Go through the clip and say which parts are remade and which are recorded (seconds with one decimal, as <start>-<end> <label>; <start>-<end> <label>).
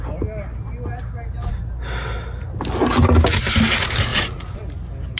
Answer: 0.0-4.1 recorded; 4.1-4.6 remade; 4.6-5.2 recorded